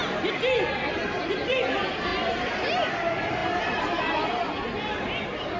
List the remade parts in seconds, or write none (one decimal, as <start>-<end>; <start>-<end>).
none